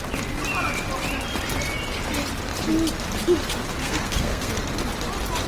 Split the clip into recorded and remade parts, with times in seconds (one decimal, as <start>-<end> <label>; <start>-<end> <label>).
0.0-3.8 recorded; 3.8-4.5 remade; 4.5-5.5 recorded